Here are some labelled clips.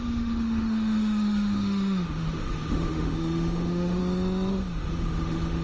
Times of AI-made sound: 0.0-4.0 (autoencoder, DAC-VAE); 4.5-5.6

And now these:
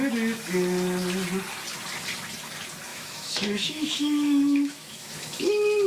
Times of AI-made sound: 2.9-5.5 (autoencoder, DAC-VAE)

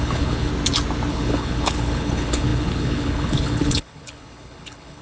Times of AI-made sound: 0.0-0.5 (codec, HILCodec); 1.1-5.0

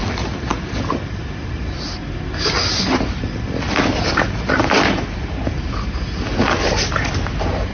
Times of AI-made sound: none

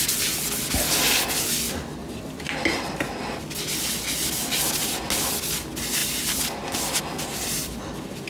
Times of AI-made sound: 2.0-2.8 (vocoder, BigVGAN v2)

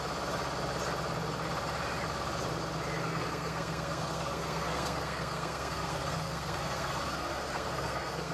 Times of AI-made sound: 3.0-8.3 (codec, SNAC)

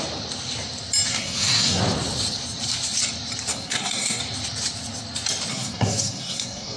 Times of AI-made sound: 1.1-1.8 (codec, SNAC); 3.5-4.2; 5.5-6.8